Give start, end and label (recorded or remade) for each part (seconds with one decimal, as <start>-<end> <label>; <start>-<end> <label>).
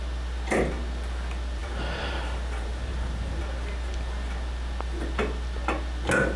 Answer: 0.0-1.6 recorded; 1.6-3.4 remade; 3.4-6.4 recorded